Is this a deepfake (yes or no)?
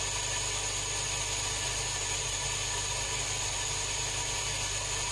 no